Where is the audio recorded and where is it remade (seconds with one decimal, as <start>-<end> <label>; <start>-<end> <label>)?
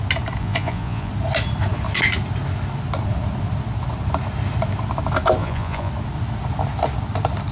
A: 0.0-0.4 recorded; 0.4-1.1 remade; 1.1-5.4 recorded; 5.4-5.9 remade; 5.9-7.5 recorded